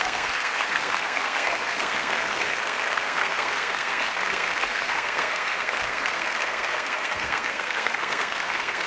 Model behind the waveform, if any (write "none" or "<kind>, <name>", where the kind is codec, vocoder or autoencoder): codec, SNAC